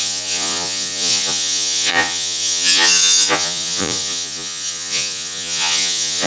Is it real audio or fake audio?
fake